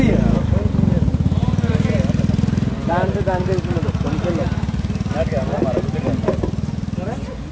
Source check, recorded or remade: recorded